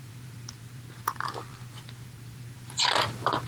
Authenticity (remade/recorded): remade